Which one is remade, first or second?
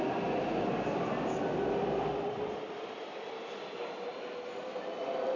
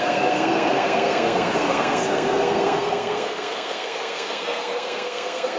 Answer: second